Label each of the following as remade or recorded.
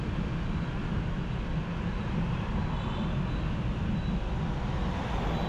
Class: recorded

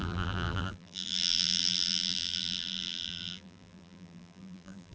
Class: remade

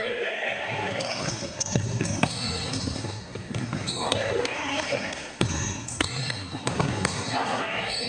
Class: remade